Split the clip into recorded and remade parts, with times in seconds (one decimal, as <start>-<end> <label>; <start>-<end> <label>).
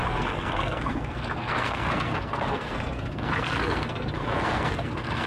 0.0-5.3 remade